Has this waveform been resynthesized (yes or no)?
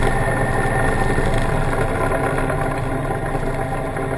no